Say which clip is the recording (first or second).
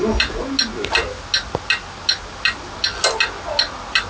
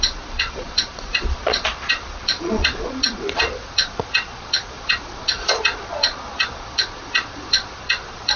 first